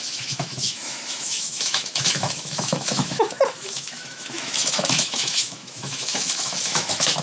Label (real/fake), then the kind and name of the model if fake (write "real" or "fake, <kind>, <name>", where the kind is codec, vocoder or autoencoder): fake, autoencoder, DAC-VAE